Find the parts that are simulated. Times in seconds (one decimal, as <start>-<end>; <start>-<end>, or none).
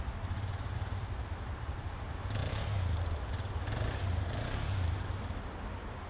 none